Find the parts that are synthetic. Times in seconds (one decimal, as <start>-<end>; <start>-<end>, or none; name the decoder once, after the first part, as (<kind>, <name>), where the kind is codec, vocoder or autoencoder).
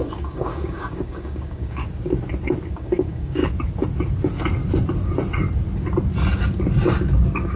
0.0-1.8 (codec, DAC); 2.7-3.4